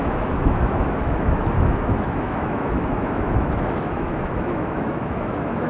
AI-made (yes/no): yes